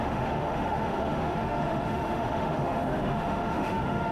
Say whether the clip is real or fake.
fake